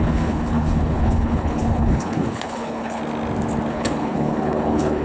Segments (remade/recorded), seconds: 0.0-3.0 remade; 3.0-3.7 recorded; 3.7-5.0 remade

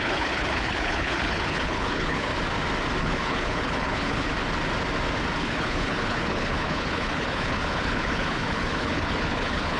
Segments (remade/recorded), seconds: 0.0-2.3 remade; 2.3-3.0 recorded; 3.0-4.3 remade; 4.3-5.4 recorded; 5.4-9.8 remade

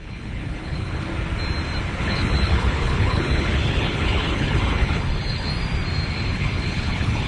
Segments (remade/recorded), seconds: 0.0-1.1 remade; 1.1-2.0 recorded; 2.0-5.5 remade; 5.5-6.1 recorded; 6.1-7.3 remade

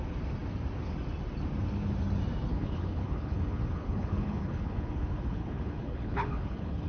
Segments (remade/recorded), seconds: 0.0-2.5 recorded; 2.5-6.9 remade

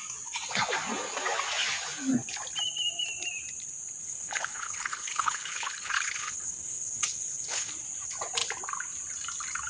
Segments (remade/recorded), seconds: 0.0-4.0 recorded; 4.0-7.7 remade; 7.7-9.7 recorded